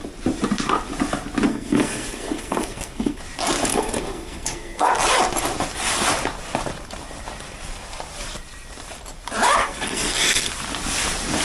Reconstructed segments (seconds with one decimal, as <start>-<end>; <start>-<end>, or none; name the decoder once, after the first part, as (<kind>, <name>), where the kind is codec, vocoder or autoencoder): 1.5-3.2 (codec, SNAC); 3.7-4.9; 9.6-10.5